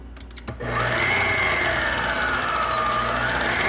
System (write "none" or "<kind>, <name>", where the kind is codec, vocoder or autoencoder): none